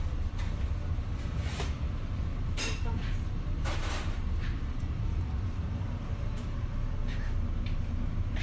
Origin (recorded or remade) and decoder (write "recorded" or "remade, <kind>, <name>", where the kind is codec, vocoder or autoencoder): remade, vocoder, BigVGAN v2